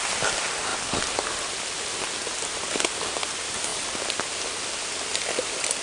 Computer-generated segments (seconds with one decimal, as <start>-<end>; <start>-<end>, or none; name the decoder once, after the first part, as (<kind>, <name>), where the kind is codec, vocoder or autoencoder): none